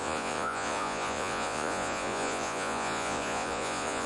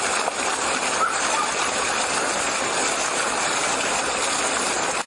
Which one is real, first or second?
second